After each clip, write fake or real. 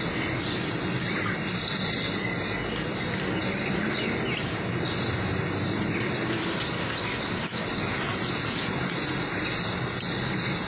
real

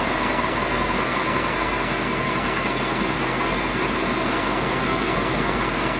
fake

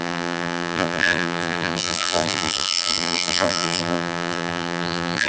fake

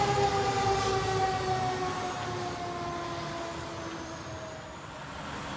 real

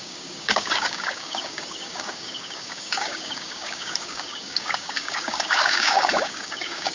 fake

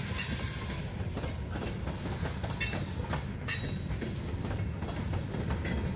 real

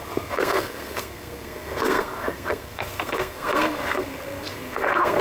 fake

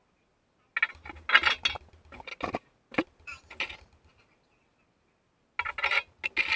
real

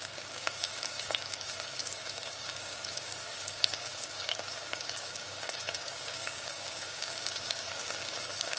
fake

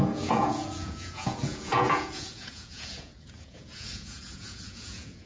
fake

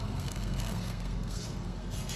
fake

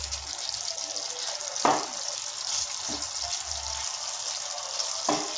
real